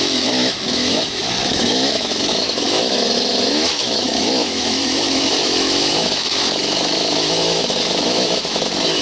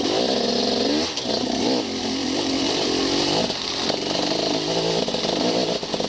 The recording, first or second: second